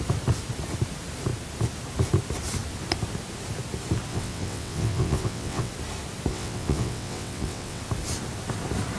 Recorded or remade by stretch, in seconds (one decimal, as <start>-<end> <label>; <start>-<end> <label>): 0.0-4.1 recorded; 4.1-5.7 remade; 5.7-6.3 recorded; 6.3-7.8 remade; 7.8-9.0 recorded